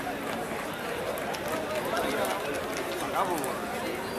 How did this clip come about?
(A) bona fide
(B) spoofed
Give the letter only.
A